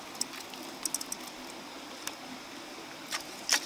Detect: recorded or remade recorded